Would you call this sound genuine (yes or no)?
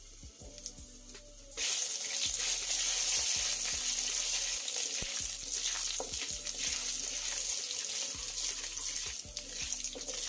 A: yes